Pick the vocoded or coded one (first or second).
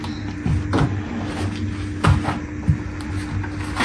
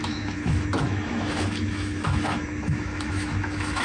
second